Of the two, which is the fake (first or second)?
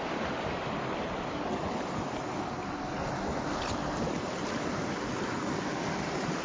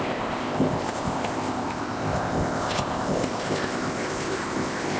second